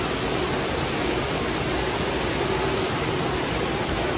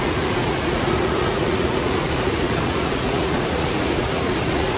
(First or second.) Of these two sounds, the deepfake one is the second